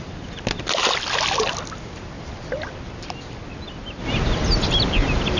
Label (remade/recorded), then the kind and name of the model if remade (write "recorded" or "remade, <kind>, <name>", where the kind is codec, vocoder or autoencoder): recorded